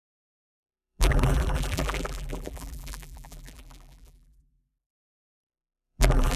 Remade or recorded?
remade